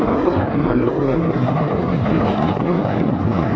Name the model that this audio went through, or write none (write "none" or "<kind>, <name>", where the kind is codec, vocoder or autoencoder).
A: codec, SNAC